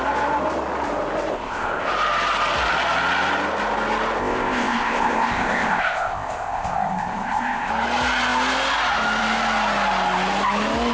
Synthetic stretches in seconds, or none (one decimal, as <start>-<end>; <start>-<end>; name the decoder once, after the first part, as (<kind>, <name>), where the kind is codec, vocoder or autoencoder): 1.3-1.9 (codec, ZipCodec); 4.2-7.7